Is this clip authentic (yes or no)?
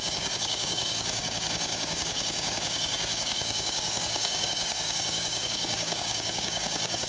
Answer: no